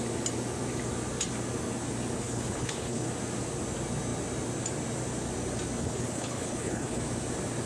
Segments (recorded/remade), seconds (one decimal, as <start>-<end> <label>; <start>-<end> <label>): 0.0-2.2 recorded; 2.2-3.1 remade; 3.1-5.8 recorded; 5.8-7.0 remade; 7.0-7.7 recorded